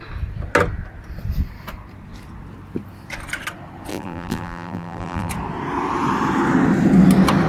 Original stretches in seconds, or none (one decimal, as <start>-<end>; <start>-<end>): 0.0-3.9; 5.3-7.5